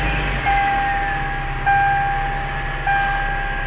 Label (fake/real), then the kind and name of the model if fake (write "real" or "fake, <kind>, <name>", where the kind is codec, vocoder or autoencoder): real